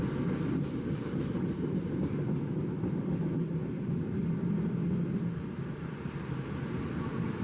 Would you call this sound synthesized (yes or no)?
no